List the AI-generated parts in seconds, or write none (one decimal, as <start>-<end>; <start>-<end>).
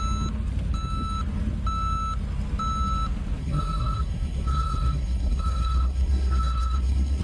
3.4-7.2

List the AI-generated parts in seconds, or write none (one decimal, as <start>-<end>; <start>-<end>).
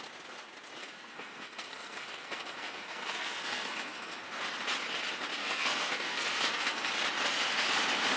0.8-4.4; 5.4-6.9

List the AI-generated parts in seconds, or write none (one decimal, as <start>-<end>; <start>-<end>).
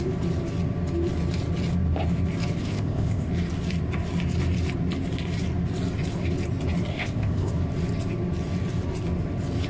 2.6-3.3; 6.9-7.5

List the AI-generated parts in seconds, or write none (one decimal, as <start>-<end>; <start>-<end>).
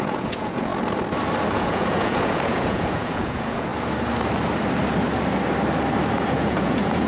0.0-0.7; 1.5-3.7; 6.3-7.1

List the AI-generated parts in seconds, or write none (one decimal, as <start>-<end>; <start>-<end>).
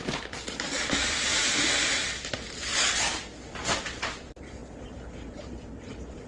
none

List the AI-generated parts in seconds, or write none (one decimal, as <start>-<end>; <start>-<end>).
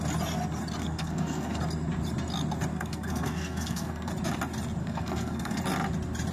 0.8-1.6; 2.7-4.1; 4.8-5.6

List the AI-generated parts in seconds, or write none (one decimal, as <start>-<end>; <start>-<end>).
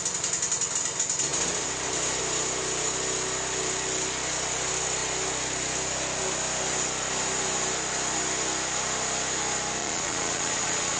9.8-11.0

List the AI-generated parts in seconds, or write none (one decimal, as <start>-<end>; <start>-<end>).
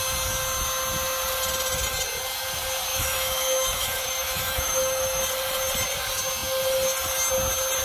2.9-5.2